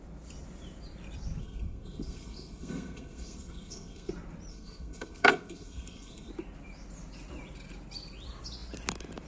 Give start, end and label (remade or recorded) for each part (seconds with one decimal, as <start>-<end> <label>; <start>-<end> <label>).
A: 0.0-1.4 recorded; 1.4-4.1 remade; 4.1-4.5 recorded; 4.5-6.3 remade; 6.3-9.3 recorded